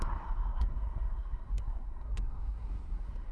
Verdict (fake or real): fake